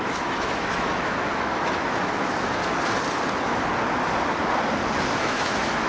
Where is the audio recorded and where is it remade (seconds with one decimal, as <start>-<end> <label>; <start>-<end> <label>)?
0.0-2.6 remade; 2.6-5.2 recorded; 5.2-5.9 remade